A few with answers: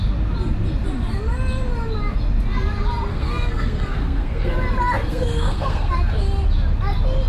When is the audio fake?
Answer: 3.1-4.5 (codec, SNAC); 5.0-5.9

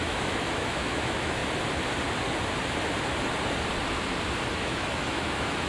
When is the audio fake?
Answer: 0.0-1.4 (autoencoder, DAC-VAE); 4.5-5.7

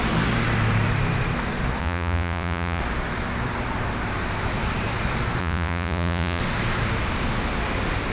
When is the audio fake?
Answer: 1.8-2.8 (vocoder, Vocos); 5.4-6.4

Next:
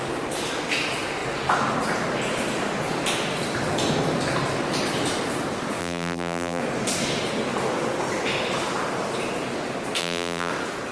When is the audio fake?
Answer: 5.8-6.6 (vocoder, BigVGAN v2); 10.0-10.5